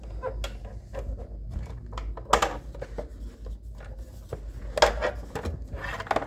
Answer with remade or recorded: recorded